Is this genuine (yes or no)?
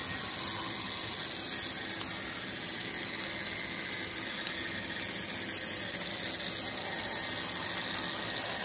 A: yes